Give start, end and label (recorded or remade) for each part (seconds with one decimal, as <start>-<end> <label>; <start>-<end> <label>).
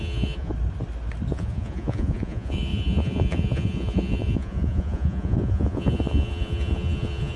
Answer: 0.0-0.5 remade; 0.5-1.3 recorded; 1.3-7.4 remade